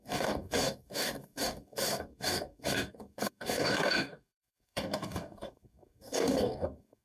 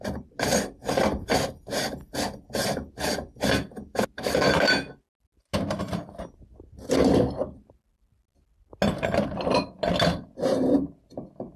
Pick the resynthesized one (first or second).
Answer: first